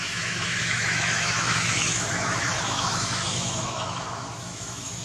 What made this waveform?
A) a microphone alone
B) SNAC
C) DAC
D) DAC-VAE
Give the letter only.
D